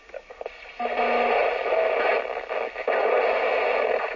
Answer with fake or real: real